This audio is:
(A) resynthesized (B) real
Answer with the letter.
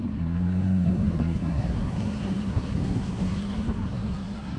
A